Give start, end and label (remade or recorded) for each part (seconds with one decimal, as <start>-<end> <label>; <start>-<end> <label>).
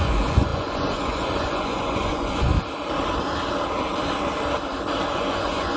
0.0-2.5 remade; 2.5-5.1 recorded; 5.1-5.8 remade